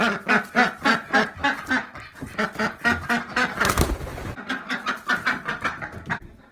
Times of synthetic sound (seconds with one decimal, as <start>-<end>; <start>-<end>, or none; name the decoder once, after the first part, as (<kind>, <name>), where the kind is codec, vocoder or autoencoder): none